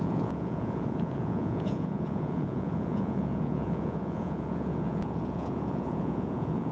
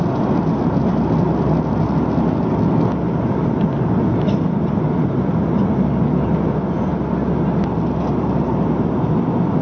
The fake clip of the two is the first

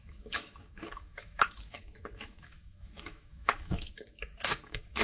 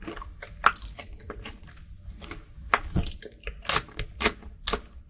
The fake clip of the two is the first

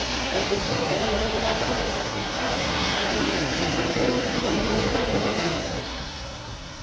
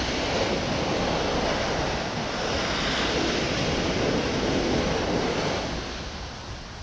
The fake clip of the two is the first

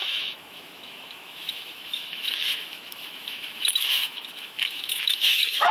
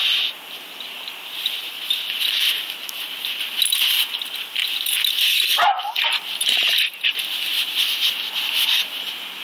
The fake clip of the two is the first